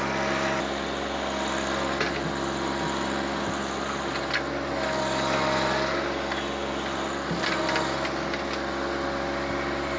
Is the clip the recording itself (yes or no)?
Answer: yes